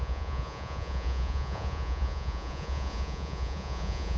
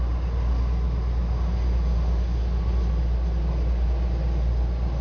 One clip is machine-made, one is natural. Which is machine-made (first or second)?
first